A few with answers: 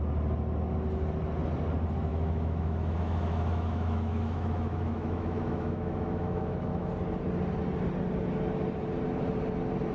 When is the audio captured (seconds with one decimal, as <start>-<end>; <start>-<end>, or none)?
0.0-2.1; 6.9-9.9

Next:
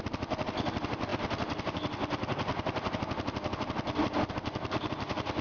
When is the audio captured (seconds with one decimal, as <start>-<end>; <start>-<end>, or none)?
0.0-5.4

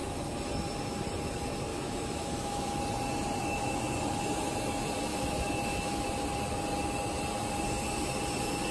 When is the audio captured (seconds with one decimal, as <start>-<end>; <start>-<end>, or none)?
0.0-1.7; 2.8-3.4; 3.9-5.1; 6.1-8.7

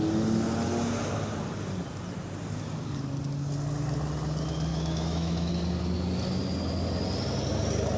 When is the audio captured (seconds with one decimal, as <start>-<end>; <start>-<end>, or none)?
0.0-4.7; 5.5-8.0

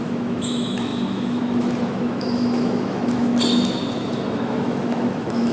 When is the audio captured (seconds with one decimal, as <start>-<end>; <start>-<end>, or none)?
3.3-3.9